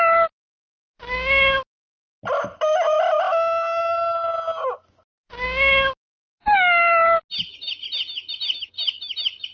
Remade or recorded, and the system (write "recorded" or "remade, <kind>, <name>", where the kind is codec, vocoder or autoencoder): recorded